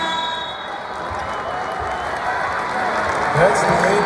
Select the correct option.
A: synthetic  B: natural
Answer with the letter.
B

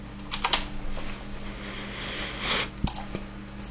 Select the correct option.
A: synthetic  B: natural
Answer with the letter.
B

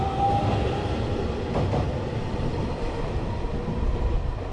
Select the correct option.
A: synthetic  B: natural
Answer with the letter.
B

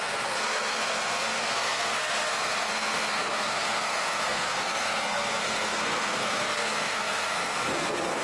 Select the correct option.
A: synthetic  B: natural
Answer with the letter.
A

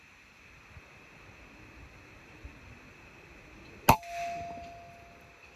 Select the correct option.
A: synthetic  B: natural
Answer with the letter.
B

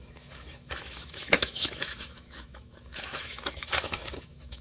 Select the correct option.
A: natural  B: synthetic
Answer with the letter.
B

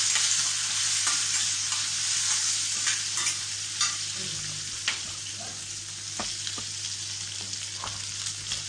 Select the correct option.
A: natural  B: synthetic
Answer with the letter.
A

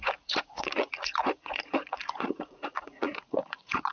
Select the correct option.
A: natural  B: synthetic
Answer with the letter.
B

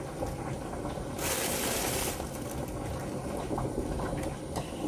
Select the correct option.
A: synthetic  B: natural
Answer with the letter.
B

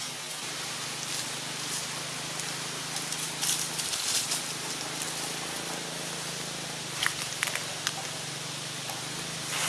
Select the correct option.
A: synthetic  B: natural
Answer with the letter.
B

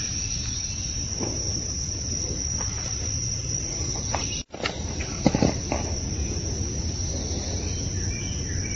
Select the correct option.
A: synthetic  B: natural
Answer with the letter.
A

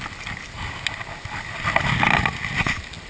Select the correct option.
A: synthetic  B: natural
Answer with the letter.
B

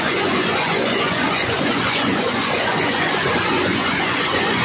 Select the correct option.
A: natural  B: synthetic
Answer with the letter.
B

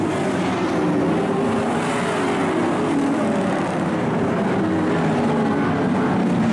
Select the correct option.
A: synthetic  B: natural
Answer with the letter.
B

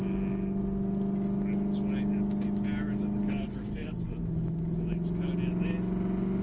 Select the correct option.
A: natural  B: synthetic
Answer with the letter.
A